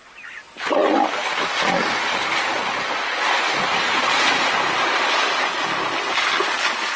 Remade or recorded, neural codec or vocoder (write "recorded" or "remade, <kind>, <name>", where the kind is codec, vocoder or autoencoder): recorded